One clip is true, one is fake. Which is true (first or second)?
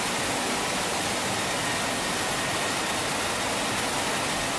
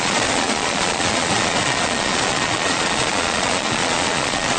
first